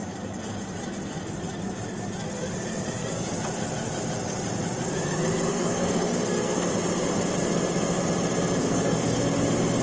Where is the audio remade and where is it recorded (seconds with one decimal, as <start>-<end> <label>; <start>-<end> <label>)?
0.0-5.5 recorded; 5.5-6.7 remade; 6.7-8.6 recorded; 8.6-9.2 remade; 9.2-9.8 recorded